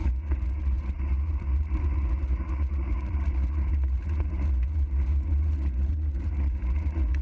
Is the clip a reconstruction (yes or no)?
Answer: yes